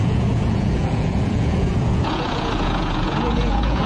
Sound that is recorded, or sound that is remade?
remade